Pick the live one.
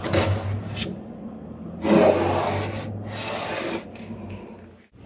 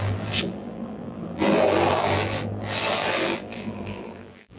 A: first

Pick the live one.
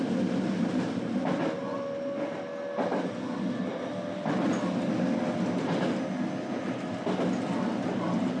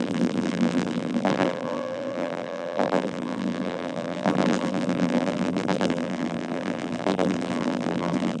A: first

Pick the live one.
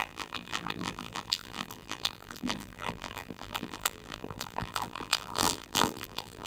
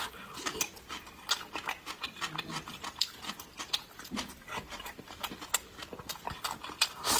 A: second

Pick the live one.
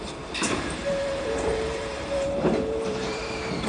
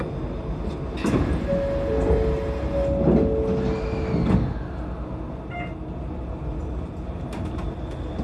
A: second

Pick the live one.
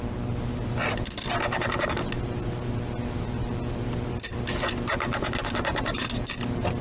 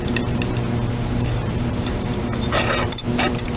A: first